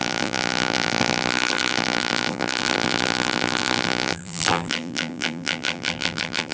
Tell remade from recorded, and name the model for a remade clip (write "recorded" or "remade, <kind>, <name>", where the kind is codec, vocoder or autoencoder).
remade, vocoder, BigVGAN v2